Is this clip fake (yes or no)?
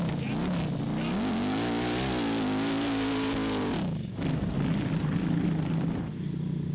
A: no